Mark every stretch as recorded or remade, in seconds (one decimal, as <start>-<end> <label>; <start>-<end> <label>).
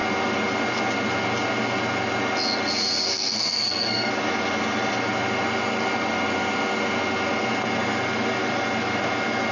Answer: 0.0-3.1 recorded; 3.1-4.1 remade; 4.1-9.5 recorded